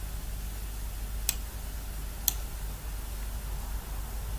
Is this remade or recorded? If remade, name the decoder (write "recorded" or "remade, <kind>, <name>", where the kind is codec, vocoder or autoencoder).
recorded